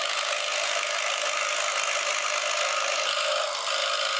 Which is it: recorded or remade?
recorded